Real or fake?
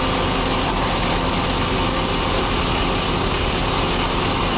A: real